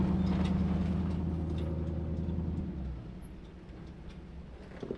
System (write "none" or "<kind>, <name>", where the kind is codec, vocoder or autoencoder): none